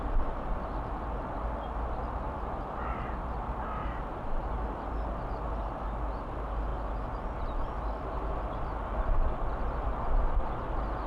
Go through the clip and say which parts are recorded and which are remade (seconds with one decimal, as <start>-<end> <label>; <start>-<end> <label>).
0.0-3.8 recorded; 3.8-4.6 remade; 4.6-11.1 recorded